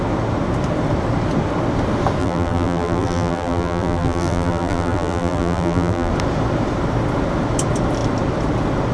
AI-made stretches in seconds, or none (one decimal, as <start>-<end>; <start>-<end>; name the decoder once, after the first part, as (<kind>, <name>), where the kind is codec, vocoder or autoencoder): 2.2-6.1 (vocoder, BigVGAN v2)

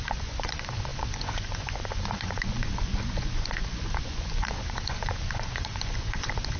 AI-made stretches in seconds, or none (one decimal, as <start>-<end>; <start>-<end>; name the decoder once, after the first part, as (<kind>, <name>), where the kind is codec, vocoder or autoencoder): 0.0-6.6 (vocoder, Vocos)

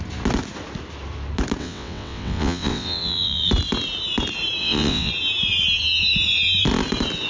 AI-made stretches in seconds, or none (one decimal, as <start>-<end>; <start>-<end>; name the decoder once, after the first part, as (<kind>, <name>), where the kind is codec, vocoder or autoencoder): 1.6-3.5 (vocoder, WaveNeXt); 4.6-5.1

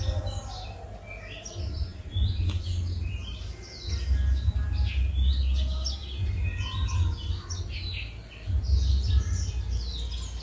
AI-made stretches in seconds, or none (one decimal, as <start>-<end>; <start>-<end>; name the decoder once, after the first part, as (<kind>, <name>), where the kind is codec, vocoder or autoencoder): 3.0-3.8 (vocoder, BigVGAN v2)